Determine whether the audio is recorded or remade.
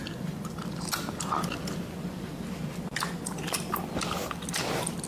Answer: recorded